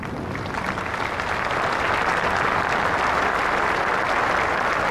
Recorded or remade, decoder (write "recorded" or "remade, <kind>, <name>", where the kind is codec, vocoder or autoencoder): recorded